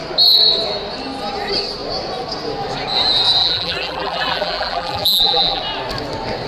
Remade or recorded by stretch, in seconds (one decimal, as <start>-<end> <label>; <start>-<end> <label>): 0.0-3.4 recorded; 3.4-5.6 remade; 5.6-6.5 recorded